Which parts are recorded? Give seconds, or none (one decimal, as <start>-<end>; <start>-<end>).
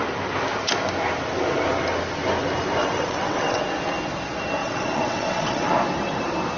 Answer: 0.0-2.8; 3.6-4.6; 5.7-6.6